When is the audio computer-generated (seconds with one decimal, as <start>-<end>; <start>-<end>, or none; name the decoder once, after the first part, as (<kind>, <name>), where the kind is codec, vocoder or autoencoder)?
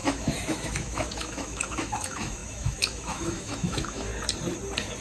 0.0-4.1 (autoencoder, DAC-VAE)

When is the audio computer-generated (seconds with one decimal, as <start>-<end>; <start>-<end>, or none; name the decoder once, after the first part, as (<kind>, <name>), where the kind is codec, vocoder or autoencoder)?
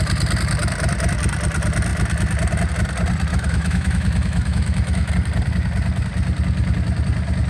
3.3-5.1 (autoencoder, DAC-VAE)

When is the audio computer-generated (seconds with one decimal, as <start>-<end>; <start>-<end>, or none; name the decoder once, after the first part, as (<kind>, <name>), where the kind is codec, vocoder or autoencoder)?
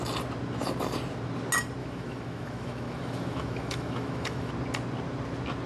1.8-4.5 (autoencoder, DAC-VAE)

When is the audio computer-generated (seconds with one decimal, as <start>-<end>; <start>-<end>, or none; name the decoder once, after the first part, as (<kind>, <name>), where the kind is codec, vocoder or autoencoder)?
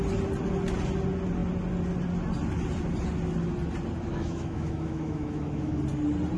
4.1-5.8 (autoencoder, DAC-VAE)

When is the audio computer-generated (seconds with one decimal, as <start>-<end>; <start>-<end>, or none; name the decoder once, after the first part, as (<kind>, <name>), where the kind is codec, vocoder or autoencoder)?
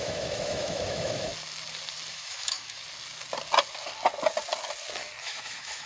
0.0-1.3 (autoencoder, DAC-VAE); 2.1-2.8; 5.2-5.9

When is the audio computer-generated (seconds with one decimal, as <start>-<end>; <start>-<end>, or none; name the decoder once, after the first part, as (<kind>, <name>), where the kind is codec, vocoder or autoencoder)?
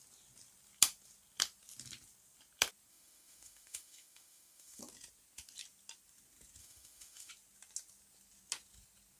2.9-4.8 (autoencoder, DAC-VAE); 6.6-7.3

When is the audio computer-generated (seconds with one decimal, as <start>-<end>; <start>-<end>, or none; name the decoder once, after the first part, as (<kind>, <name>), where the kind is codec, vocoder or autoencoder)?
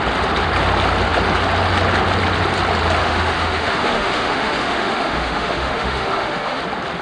3.0-6.6 (autoencoder, DAC-VAE)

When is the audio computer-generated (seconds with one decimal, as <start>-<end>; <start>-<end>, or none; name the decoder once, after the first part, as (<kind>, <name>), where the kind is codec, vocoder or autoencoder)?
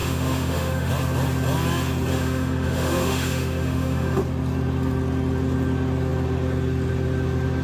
0.0-0.9 (autoencoder, DAC-VAE); 2.1-4.2